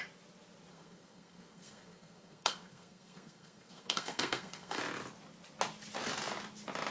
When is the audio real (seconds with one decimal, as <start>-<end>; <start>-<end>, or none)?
0.0-0.7; 4.8-6.9